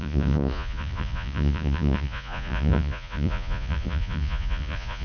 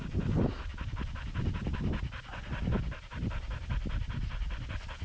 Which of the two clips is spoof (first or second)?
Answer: first